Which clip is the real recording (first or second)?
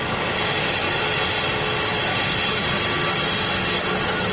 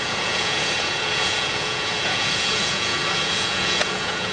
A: first